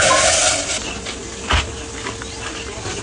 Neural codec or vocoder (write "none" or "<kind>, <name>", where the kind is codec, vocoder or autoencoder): none